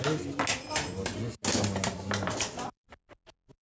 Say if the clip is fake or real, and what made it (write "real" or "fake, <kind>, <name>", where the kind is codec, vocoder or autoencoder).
real